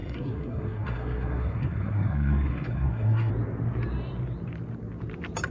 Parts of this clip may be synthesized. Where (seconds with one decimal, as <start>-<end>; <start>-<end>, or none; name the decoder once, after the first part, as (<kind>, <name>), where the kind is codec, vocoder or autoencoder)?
0.0-3.3 (codec, SNAC)